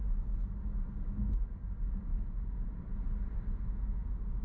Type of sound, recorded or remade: recorded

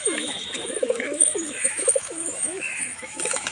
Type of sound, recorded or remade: remade